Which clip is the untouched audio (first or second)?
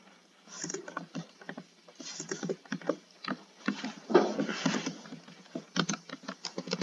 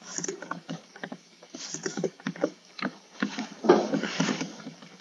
first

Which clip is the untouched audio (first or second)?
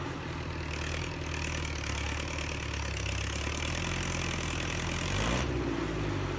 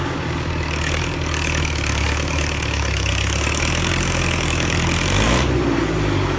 first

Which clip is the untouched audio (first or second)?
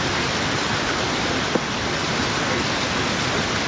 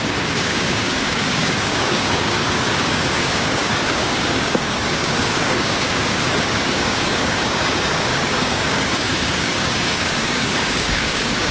first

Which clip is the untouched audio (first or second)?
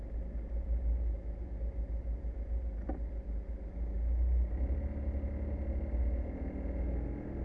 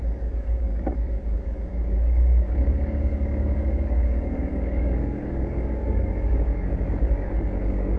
first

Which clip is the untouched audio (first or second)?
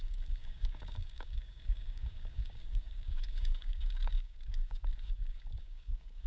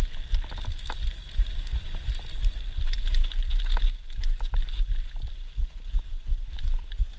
second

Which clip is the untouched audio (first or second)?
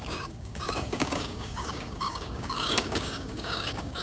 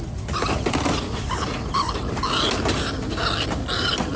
second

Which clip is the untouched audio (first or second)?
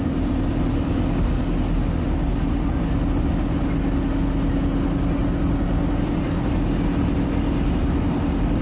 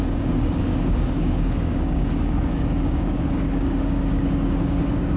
first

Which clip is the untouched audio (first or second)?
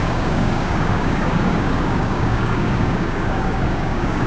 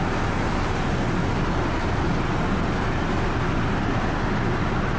second